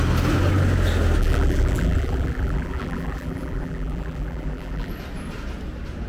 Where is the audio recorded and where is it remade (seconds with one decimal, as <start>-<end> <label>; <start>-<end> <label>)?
0.0-1.2 recorded; 1.2-4.9 remade; 4.9-6.1 recorded